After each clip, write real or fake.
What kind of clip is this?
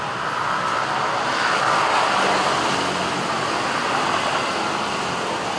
real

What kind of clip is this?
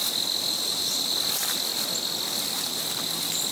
real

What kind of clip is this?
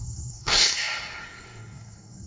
fake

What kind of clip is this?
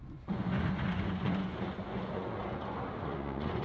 fake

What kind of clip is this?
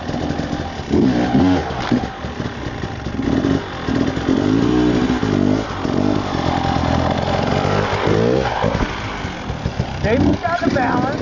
real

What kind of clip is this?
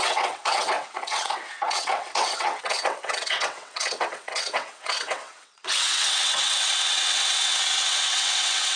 fake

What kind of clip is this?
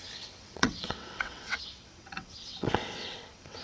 fake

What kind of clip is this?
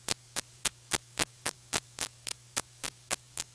fake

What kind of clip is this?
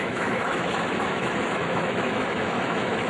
fake